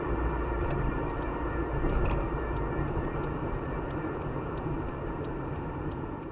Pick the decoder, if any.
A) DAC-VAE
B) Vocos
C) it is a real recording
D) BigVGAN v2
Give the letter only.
D